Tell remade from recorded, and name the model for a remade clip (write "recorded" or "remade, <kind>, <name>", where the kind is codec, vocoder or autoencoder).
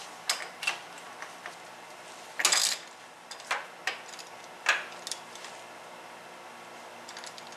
recorded